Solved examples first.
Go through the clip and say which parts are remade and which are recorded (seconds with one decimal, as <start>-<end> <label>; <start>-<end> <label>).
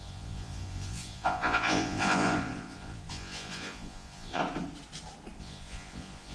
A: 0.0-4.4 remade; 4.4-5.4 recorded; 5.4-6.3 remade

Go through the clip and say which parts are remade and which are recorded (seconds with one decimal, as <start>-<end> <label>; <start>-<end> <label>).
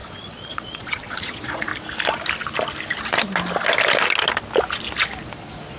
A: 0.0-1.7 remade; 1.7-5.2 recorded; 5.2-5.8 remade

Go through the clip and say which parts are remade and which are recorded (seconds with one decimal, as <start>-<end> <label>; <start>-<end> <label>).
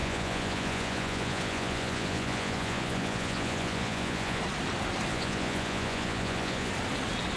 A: 0.0-4.4 remade; 4.4-5.1 recorded; 5.1-6.7 remade; 6.7-7.4 recorded